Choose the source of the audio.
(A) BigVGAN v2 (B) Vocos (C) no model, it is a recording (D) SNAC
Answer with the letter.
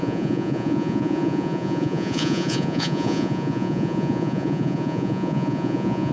B